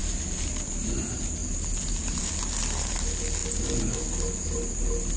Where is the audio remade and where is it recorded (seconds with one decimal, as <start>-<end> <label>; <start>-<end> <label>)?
0.0-5.2 recorded